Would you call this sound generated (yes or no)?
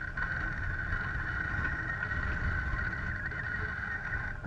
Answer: no